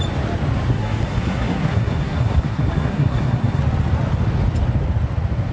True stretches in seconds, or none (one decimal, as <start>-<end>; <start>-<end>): 0.0-0.7; 3.6-5.5